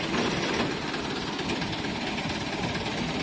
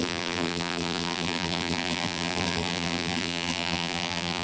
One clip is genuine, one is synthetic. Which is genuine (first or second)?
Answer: first